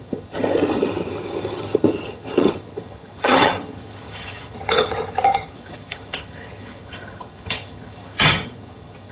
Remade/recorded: remade